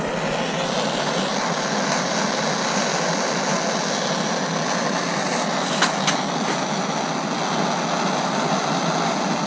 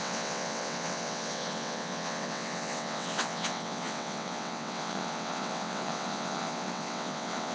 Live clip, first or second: first